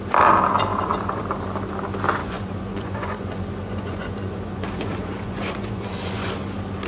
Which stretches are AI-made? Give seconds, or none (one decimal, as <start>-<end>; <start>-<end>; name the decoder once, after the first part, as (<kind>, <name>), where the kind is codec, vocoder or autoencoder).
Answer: 0.7-1.2 (vocoder, Vocos); 2.2-6.3

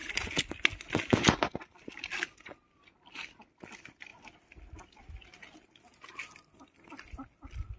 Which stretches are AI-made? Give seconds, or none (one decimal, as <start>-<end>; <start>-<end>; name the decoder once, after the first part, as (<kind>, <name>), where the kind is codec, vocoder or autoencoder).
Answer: none

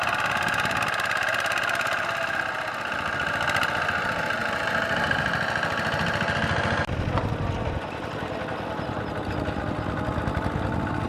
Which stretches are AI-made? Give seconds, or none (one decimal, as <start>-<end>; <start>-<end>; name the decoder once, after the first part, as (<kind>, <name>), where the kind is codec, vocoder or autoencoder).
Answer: none

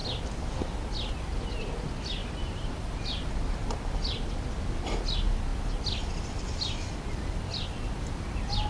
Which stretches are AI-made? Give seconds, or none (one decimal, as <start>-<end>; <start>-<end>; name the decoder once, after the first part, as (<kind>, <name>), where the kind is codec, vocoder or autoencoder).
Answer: 2.2-3.3 (vocoder, BigVGAN v2)

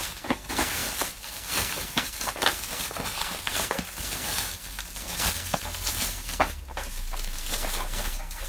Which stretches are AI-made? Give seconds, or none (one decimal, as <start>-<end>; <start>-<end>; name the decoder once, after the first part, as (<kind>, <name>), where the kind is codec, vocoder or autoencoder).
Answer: 0.0-8.5 (codec, SNAC)

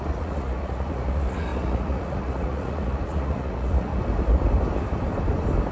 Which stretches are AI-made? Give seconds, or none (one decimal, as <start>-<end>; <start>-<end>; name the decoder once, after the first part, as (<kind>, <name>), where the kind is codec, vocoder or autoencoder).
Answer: 0.0-3.9 (vocoder, Vocos)

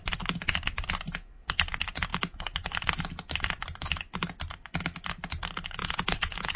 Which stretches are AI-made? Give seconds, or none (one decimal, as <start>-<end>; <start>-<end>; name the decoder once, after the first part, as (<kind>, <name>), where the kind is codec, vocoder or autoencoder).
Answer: 5.8-6.6 (vocoder, Vocos)

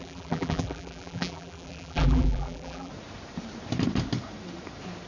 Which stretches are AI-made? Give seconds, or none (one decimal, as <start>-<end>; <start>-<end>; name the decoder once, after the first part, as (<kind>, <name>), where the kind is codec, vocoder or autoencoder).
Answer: 0.0-2.9 (vocoder, BigVGAN v2)